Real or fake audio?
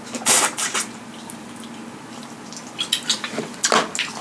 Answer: real